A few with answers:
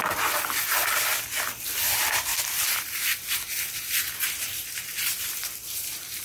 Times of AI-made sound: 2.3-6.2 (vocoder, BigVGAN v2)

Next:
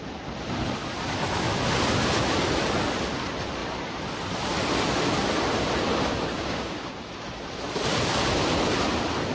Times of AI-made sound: 6.3-7.1 (codec, DAC)

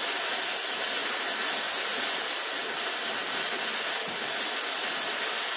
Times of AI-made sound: none

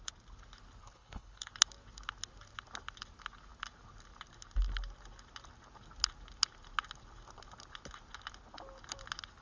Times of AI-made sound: 0.8-1.5 (codec, HILCodec)